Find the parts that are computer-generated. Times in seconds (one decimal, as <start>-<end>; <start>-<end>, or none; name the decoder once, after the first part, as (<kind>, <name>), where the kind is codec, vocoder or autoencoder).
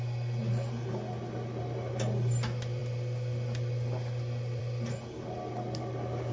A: none